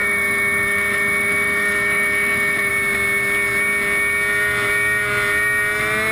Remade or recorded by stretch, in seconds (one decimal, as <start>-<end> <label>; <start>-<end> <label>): 0.0-2.7 remade; 2.7-6.1 recorded